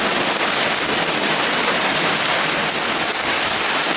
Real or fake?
real